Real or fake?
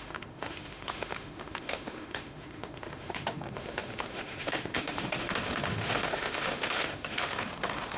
fake